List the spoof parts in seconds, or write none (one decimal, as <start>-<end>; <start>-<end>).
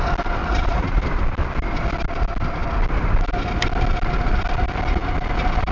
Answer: 0.4-1.0